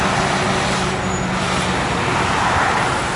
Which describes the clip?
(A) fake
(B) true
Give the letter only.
B